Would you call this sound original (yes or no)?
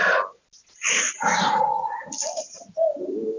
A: yes